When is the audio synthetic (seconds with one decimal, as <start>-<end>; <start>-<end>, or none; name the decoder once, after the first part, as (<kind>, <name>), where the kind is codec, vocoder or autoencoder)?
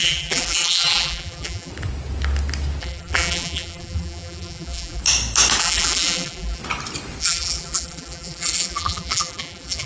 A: 0.0-1.7 (vocoder, BigVGAN v2); 2.8-5.0; 5.6-6.6; 7.2-9.9